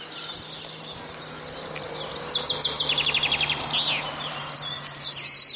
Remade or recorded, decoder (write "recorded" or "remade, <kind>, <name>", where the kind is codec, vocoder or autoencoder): recorded